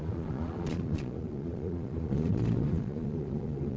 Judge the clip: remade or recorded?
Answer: remade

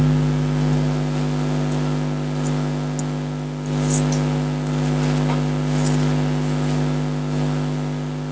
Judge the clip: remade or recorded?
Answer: recorded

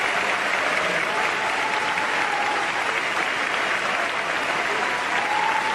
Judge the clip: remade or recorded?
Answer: recorded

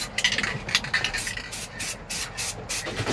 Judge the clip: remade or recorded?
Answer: recorded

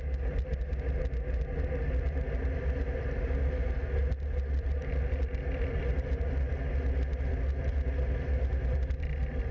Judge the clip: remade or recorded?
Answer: recorded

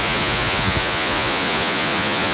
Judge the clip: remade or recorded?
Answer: remade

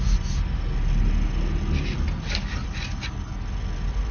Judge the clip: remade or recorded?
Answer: recorded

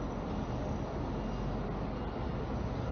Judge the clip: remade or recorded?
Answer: recorded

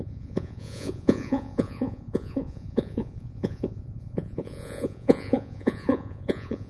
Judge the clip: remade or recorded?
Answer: remade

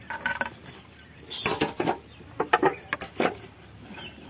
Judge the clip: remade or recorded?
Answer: recorded